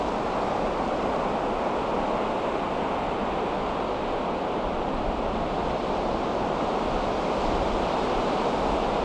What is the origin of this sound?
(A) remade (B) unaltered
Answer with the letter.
B